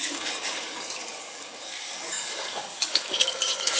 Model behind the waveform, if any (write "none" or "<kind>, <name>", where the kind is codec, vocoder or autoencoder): codec, DAC